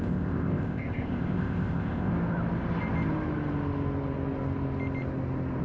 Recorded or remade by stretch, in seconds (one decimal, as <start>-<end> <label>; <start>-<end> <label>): 0.0-2.1 remade; 2.1-5.6 recorded